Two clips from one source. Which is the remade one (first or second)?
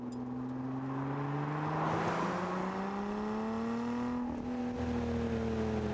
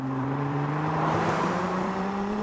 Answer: second